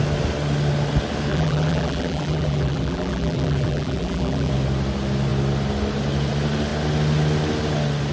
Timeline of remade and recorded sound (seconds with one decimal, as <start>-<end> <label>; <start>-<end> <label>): 0.0-1.3 recorded; 1.3-4.5 remade; 4.5-8.1 recorded